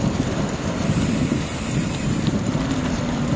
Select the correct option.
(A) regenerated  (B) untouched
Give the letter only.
B